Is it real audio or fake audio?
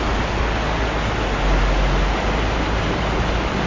real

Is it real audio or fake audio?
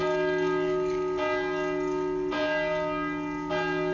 real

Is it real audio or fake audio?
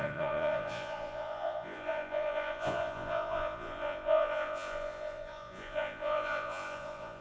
fake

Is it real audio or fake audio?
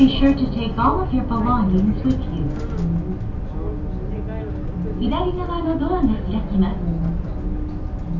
real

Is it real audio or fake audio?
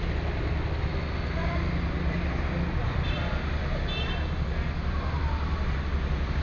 real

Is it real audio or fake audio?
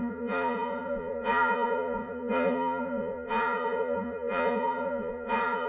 fake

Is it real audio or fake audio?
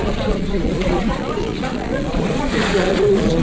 fake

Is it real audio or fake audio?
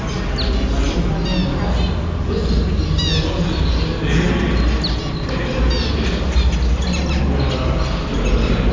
real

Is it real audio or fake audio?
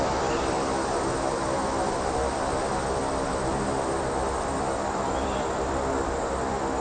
fake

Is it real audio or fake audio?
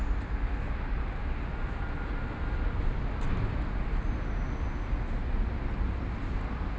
real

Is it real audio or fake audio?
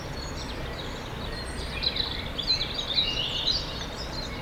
real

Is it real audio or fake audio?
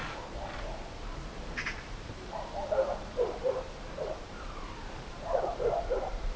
fake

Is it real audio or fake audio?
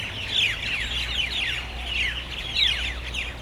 real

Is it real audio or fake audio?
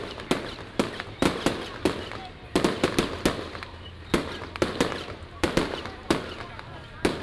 real